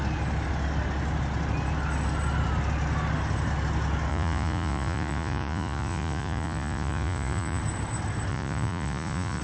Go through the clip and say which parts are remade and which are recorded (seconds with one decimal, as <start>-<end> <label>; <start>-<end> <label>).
0.0-4.1 recorded; 4.1-7.6 remade; 7.6-8.3 recorded; 8.3-9.4 remade